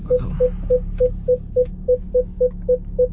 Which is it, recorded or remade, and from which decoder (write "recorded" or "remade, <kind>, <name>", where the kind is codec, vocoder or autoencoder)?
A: recorded